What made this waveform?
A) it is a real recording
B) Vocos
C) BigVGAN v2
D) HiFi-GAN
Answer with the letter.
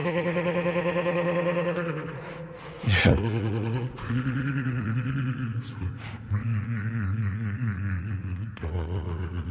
B